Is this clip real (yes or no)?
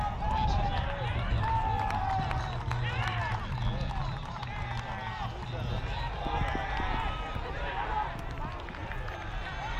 yes